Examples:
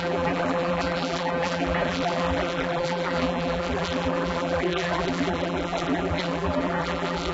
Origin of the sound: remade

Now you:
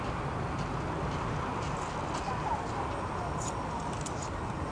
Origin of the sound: recorded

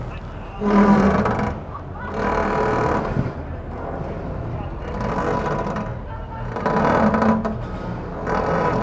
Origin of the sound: recorded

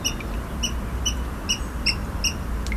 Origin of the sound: recorded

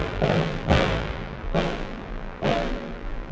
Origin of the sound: remade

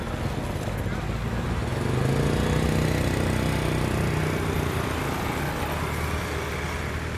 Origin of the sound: recorded